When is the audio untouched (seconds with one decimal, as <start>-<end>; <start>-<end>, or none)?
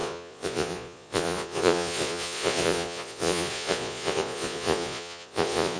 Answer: none